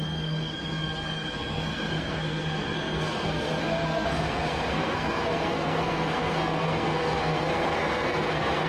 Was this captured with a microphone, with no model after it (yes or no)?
no